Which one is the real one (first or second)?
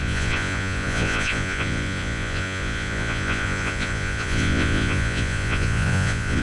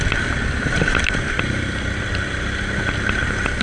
second